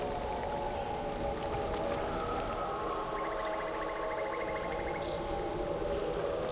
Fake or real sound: real